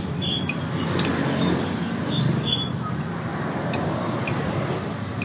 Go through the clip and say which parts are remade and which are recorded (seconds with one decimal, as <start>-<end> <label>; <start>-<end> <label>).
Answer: 0.0-3.3 remade; 3.3-3.9 recorded; 3.9-5.2 remade